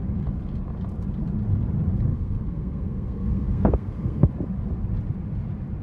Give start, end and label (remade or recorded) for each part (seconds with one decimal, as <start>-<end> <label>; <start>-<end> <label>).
0.0-2.1 recorded; 2.1-4.3 remade; 4.3-5.8 recorded

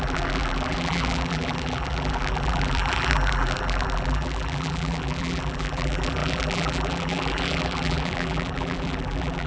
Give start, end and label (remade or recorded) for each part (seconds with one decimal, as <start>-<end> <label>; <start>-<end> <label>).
0.0-9.5 remade

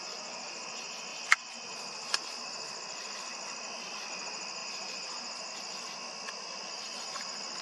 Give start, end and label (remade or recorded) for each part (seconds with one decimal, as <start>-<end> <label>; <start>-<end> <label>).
0.0-4.6 recorded; 4.6-5.5 remade; 5.5-7.6 recorded

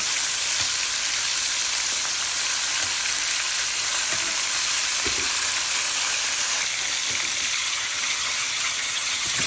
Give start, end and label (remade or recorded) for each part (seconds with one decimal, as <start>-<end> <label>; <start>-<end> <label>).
0.0-7.6 recorded; 7.6-9.5 remade

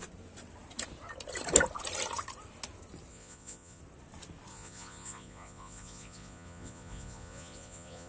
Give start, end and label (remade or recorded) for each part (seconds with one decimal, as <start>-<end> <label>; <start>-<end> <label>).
0.0-3.1 recorded; 3.1-3.8 remade; 3.8-4.5 recorded; 4.5-8.1 remade

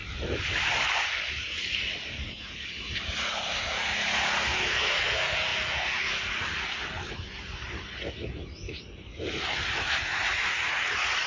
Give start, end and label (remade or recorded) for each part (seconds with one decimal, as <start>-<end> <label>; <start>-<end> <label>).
0.0-11.3 recorded

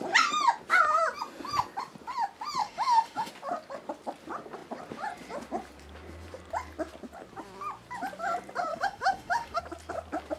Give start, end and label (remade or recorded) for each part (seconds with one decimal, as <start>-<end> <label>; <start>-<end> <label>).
0.0-2.6 recorded; 2.6-3.3 remade; 3.3-8.7 recorded; 8.7-9.6 remade; 9.6-10.4 recorded

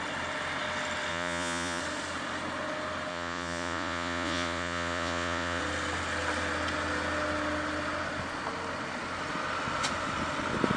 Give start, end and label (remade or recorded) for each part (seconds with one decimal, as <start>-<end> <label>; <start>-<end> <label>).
0.0-1.1 recorded; 1.1-1.8 remade; 1.8-3.1 recorded; 3.1-5.6 remade; 5.6-10.8 recorded